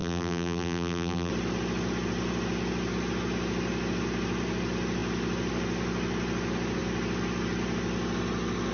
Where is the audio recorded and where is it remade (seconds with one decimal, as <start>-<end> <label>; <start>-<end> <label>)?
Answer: 0.0-1.3 remade; 1.3-8.7 recorded